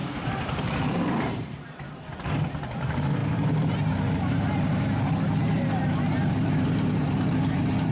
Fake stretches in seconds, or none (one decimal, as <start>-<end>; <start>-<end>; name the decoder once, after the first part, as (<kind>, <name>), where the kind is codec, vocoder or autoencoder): 0.6-7.9 (vocoder, BigVGAN v2)